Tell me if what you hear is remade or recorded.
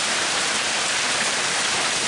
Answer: recorded